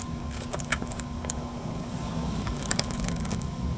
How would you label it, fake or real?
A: fake